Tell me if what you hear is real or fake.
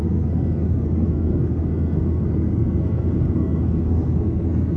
fake